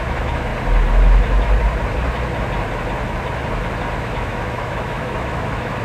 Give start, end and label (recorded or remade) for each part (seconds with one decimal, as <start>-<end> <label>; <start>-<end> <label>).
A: 0.0-0.5 remade; 0.5-4.0 recorded; 4.0-5.8 remade